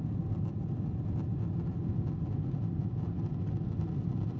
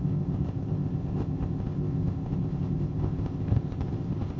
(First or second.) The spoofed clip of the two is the second